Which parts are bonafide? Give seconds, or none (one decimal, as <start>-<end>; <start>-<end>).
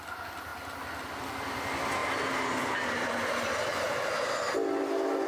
0.0-5.3